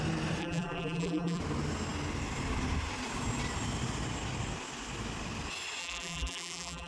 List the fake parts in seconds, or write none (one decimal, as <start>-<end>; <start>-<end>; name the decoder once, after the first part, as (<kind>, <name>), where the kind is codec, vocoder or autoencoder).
0.4-1.4 (vocoder, BigVGAN v2); 5.8-6.9